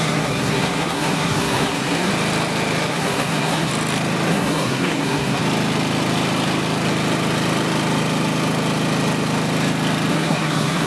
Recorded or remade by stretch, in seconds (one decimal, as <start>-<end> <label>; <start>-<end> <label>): 0.0-2.1 remade; 2.1-2.9 recorded; 2.9-3.7 remade; 3.7-4.3 recorded; 4.3-5.4 remade; 5.4-10.1 recorded; 10.1-10.9 remade